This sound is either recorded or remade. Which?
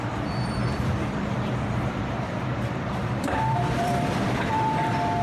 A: remade